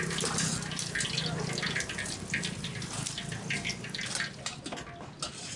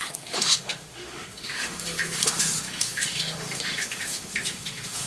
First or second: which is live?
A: first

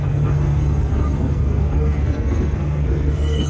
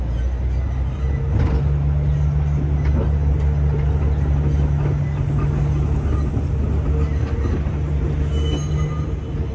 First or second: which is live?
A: second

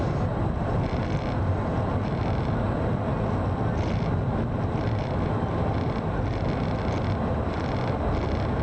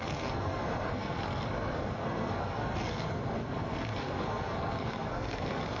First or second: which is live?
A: first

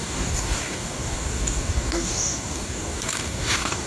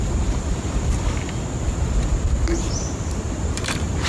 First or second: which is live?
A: second